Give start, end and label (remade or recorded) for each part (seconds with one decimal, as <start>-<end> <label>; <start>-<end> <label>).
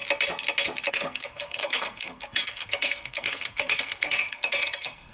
0.0-0.9 recorded; 0.9-5.1 remade